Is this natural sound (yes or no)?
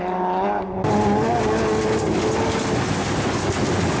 yes